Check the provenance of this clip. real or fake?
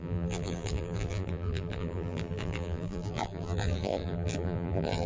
fake